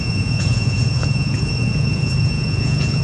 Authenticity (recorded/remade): remade